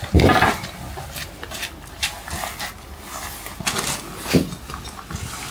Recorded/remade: recorded